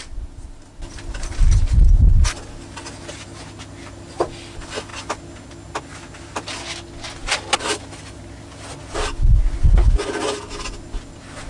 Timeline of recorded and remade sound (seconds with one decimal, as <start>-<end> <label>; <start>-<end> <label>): 0.0-11.5 recorded

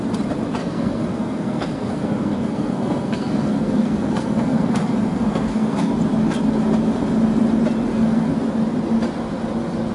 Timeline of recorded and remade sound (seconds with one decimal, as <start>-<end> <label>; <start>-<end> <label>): 0.0-0.6 recorded; 0.6-5.9 remade; 5.9-7.9 recorded; 7.9-8.4 remade; 8.4-9.9 recorded

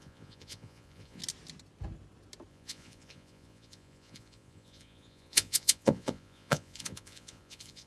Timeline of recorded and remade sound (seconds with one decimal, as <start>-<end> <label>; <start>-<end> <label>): 0.0-1.2 remade; 1.2-2.5 recorded; 2.5-7.9 remade

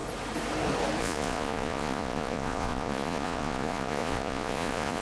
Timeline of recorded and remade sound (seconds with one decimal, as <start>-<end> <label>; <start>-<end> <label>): 0.0-1.0 recorded; 1.0-5.0 remade